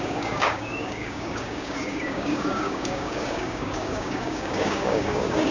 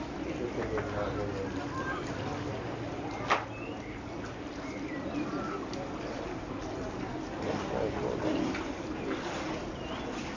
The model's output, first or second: first